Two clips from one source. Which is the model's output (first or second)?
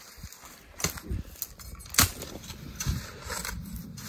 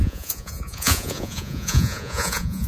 second